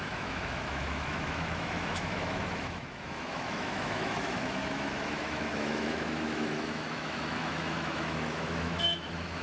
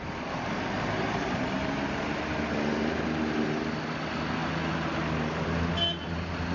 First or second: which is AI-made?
first